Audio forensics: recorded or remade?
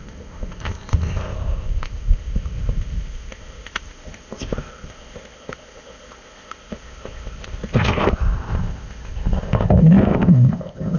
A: remade